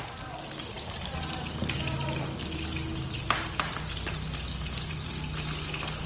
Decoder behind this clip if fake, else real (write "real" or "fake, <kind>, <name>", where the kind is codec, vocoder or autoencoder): real